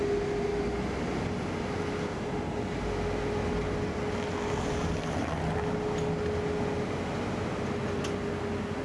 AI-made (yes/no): no